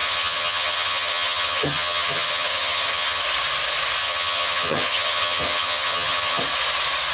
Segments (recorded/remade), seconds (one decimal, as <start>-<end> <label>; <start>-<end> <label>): 0.0-3.2 remade; 3.2-4.0 recorded; 4.0-6.4 remade; 6.4-7.1 recorded